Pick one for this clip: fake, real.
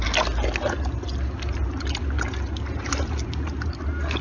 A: real